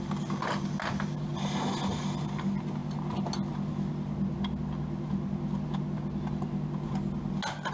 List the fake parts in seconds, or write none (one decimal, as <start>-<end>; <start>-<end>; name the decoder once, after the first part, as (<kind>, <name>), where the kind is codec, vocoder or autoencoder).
none